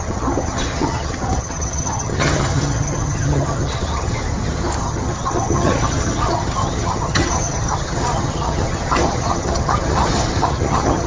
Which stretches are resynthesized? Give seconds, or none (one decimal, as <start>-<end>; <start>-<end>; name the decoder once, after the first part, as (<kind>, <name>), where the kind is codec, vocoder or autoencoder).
0.0-4.2 (vocoder, HiFi-GAN); 4.8-11.1